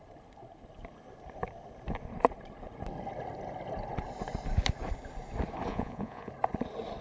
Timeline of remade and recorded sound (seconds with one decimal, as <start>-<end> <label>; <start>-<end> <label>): 0.0-5.7 recorded; 5.7-6.3 remade; 6.3-7.0 recorded